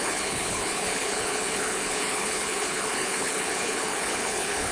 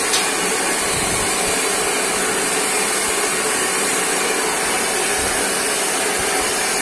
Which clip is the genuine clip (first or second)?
second